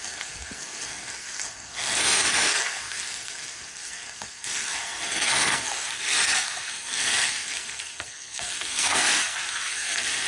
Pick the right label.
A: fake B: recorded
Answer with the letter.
A